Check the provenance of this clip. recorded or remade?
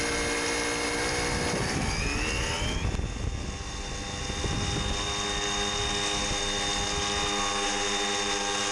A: recorded